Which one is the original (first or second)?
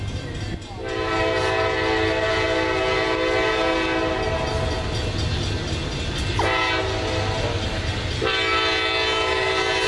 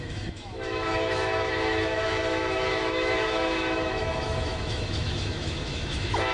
first